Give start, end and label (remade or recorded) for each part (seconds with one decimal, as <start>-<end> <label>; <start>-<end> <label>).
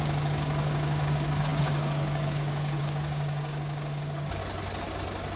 0.0-4.4 remade; 4.4-5.4 recorded